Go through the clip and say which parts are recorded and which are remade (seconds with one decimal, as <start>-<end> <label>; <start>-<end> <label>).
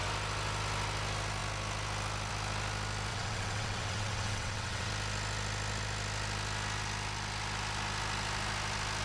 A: 0.0-3.1 recorded; 3.1-4.9 remade; 4.9-9.0 recorded